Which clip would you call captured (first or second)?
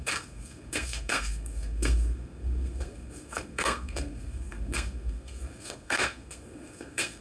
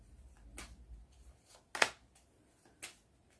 second